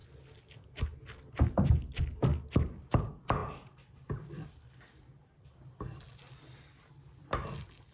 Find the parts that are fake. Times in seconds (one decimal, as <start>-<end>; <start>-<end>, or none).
none